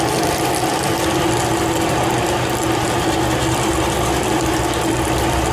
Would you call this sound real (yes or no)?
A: yes